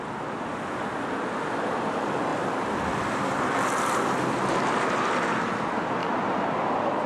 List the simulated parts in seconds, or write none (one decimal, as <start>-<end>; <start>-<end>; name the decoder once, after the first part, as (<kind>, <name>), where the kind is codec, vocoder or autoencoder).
6.0-7.1 (vocoder, BigVGAN v2)